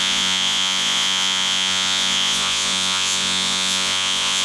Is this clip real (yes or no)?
no